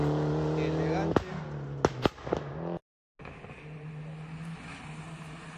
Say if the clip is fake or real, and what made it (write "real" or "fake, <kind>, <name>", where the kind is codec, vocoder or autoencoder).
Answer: real